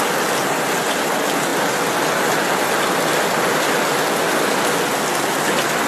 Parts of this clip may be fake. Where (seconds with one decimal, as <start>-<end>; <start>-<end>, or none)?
none